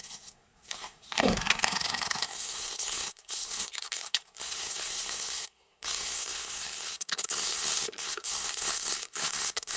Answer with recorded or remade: remade